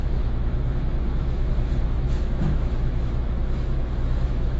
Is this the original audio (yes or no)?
no